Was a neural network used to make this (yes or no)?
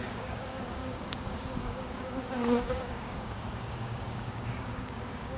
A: yes